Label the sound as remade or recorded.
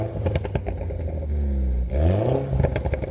recorded